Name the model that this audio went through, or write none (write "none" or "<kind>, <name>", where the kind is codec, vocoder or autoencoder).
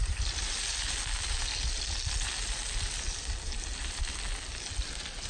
none